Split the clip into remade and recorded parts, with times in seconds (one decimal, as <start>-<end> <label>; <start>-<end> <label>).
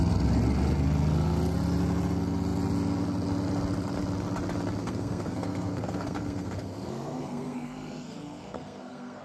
0.0-4.8 recorded; 4.8-9.2 remade